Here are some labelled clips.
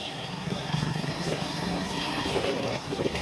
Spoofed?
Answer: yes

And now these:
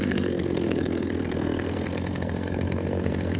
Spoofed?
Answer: yes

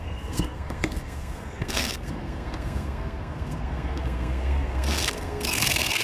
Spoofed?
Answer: yes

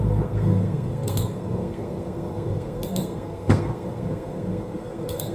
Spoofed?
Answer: yes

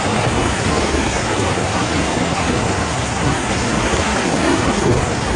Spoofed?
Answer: yes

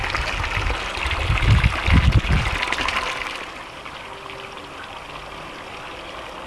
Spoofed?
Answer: no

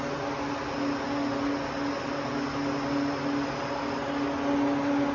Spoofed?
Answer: no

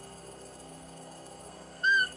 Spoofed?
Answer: yes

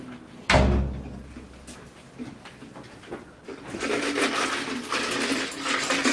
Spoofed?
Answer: no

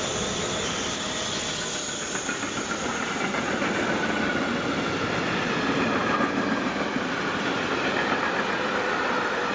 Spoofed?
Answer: no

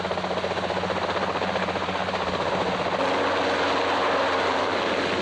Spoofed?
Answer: no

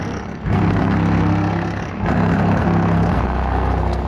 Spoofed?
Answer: yes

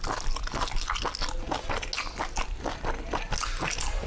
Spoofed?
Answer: no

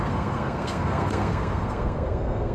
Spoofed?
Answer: yes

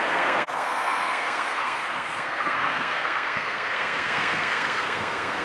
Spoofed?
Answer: yes